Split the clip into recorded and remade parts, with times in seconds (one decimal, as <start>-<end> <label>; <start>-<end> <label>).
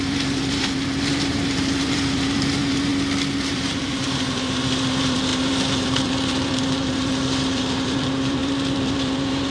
0.0-2.9 remade; 2.9-3.4 recorded; 3.4-9.5 remade